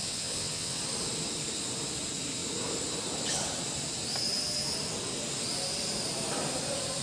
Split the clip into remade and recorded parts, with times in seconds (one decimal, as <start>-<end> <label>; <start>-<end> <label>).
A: 0.0-0.8 remade; 0.8-7.0 recorded